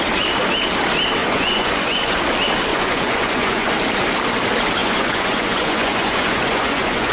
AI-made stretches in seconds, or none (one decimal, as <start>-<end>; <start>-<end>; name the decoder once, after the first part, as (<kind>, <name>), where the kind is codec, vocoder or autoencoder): 1.2-2.2 (vocoder, Vocos); 2.7-3.7; 4.8-7.1